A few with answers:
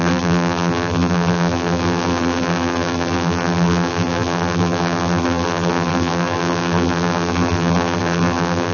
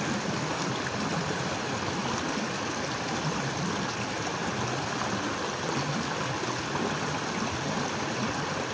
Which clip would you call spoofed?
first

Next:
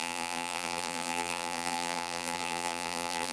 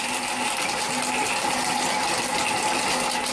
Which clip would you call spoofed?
first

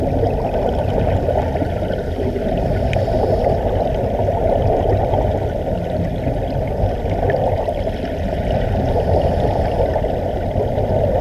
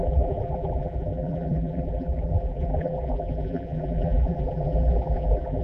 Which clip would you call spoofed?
second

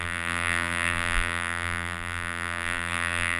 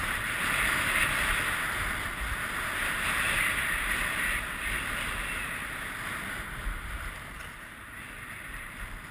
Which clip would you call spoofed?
first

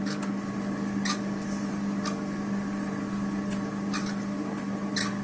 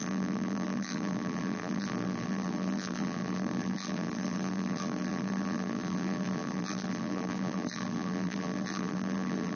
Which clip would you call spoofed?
second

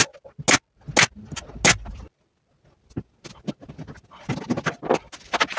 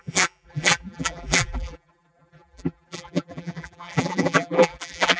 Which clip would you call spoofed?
second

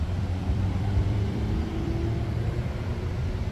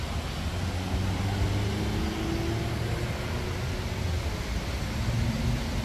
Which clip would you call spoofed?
first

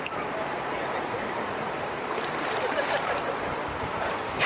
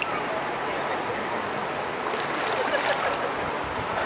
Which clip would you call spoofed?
first